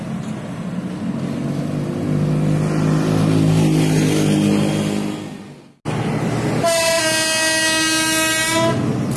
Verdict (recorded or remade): recorded